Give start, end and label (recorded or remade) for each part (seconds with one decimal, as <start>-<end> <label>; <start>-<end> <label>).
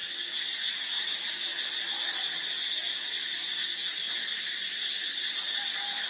0.0-0.7 recorded; 0.7-1.5 remade; 1.5-4.8 recorded; 4.8-6.1 remade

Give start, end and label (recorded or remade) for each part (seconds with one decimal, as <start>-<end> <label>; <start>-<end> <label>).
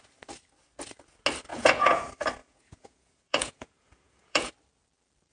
0.0-1.5 recorded; 1.5-2.0 remade; 2.0-2.4 recorded; 2.4-4.5 remade; 4.5-5.3 recorded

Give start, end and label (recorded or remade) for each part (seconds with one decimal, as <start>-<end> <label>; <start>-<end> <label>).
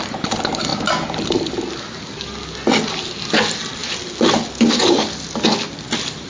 0.0-6.3 recorded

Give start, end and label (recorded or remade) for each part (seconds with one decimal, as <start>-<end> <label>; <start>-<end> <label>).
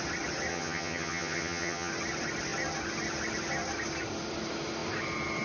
0.0-0.5 recorded; 0.5-1.9 remade; 1.9-5.4 recorded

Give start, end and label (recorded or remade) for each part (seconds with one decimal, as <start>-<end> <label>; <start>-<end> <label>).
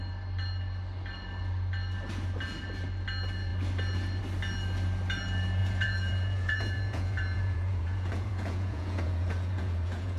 0.0-5.6 recorded; 5.6-10.2 remade